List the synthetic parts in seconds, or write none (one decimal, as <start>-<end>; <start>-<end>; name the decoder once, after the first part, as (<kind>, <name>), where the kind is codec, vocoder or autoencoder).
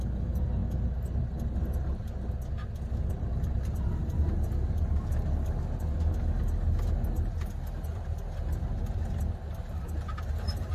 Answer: none